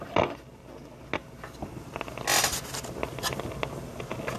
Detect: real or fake real